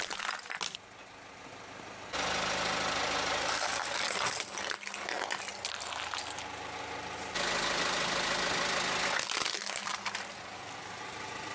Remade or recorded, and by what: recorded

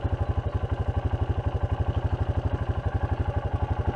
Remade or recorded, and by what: recorded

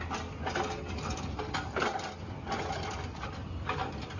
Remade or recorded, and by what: recorded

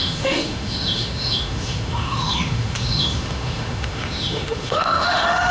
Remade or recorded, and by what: remade, autoencoder, DAC-VAE